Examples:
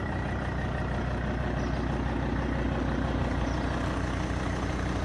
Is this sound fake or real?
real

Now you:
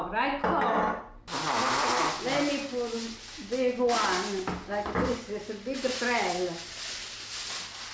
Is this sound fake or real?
real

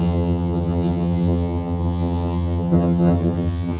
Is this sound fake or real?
fake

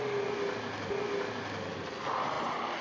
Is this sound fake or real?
real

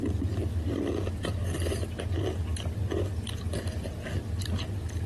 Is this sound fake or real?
real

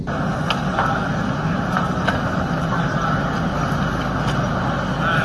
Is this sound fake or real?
real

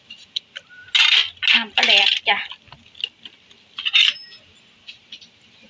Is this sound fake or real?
real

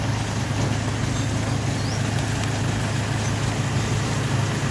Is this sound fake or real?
real